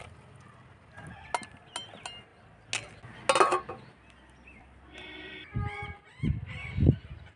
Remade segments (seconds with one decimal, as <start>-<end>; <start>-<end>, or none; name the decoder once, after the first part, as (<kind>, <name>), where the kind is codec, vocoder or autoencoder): none